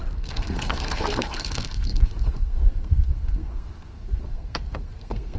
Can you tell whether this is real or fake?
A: fake